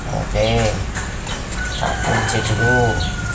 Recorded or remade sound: recorded